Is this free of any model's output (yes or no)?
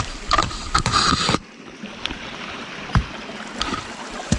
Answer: no